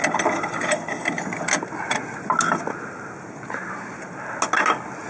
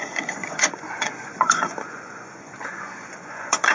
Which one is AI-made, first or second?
second